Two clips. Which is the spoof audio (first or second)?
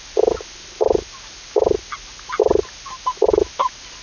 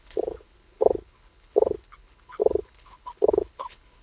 second